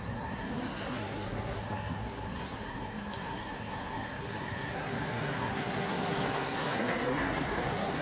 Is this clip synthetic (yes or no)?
yes